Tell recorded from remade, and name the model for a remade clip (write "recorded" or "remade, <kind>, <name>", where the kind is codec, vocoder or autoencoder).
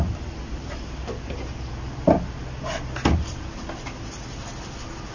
recorded